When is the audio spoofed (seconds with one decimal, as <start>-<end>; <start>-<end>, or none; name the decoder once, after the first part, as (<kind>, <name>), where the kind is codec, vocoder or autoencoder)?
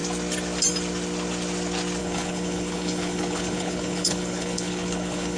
2.0-5.4 (codec, HILCodec)